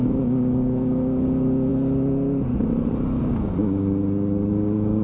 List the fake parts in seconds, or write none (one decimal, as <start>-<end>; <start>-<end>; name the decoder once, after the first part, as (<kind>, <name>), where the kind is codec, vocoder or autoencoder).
0.0-1.7 (codec, DAC); 3.2-5.0